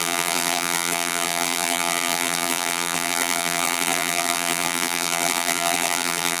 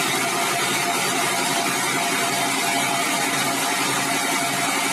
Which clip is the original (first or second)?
second